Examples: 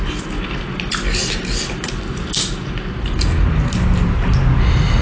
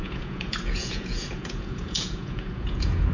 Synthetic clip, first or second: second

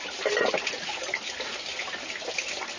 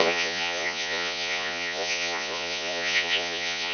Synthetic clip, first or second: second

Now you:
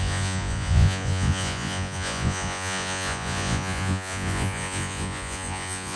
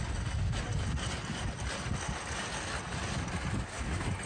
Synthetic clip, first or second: first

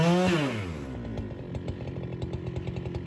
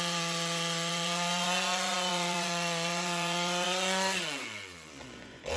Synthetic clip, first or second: second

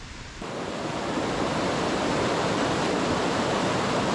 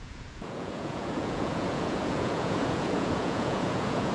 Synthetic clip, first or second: second